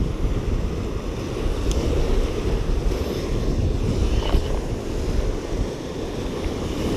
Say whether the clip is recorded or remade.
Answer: recorded